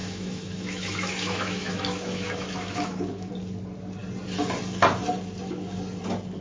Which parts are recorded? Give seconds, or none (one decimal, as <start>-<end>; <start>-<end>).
3.3-6.4